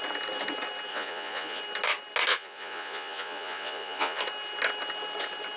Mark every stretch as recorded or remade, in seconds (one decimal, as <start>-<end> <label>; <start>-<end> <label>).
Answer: 0.0-0.9 recorded; 0.9-1.6 remade; 1.6-2.3 recorded; 2.3-4.2 remade; 4.2-5.6 recorded